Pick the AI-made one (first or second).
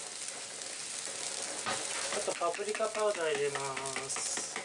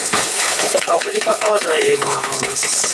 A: second